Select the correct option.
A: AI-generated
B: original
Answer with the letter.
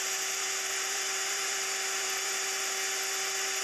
A